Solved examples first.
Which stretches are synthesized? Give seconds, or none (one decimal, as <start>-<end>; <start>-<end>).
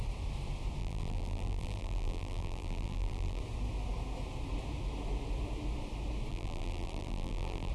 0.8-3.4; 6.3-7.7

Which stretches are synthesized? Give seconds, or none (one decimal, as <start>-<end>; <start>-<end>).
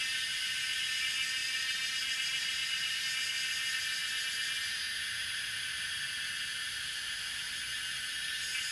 1.4-3.0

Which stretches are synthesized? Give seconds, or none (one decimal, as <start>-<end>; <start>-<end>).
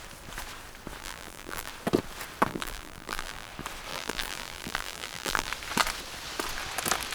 1.0-1.7; 2.5-3.5; 3.9-5.5